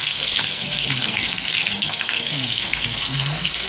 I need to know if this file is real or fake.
fake